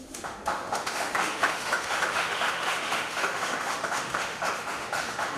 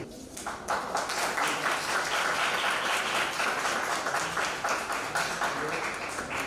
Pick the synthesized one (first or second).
first